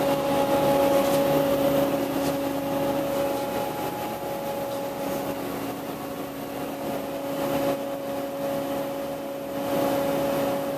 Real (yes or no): yes